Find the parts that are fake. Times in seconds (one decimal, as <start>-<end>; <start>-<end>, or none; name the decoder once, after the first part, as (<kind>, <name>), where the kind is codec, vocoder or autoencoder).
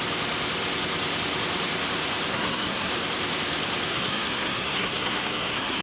2.3-2.9 (codec, SNAC); 3.9-5.8